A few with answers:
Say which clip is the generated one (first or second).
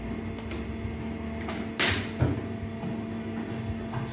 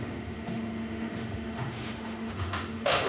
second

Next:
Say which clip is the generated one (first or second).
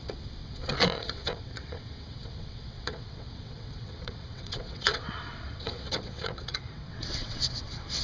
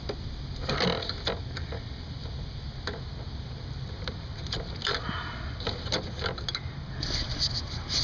first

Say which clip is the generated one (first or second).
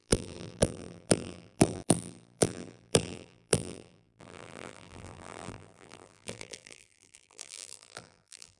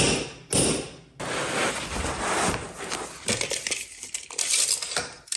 first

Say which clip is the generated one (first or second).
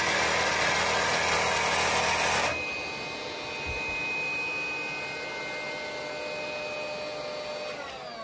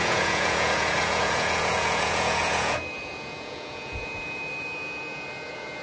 second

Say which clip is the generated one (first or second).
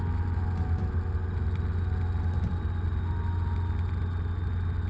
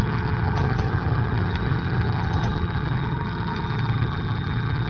second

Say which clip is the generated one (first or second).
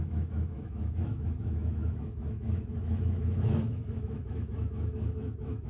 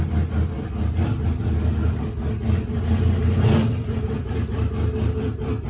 first